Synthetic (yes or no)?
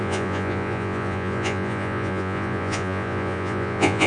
yes